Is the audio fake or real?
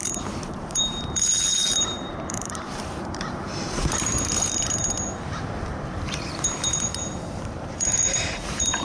fake